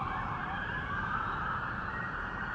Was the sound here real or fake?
fake